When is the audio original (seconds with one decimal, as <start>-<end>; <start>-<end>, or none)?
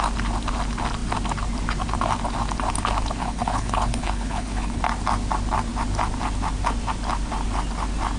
0.0-3.2; 4.8-8.2